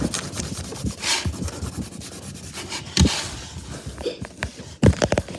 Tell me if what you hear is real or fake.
real